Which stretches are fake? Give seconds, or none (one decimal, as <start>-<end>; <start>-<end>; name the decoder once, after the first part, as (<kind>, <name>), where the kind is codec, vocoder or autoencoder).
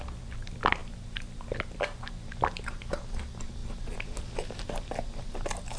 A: none